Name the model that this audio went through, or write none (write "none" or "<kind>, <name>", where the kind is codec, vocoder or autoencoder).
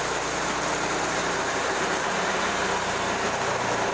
vocoder, BigVGAN v2